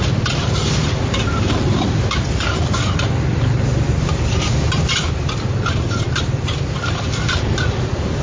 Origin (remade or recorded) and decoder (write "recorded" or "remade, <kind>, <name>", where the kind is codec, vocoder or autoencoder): remade, vocoder, BigVGAN v2